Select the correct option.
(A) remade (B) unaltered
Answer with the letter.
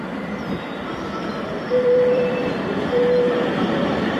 A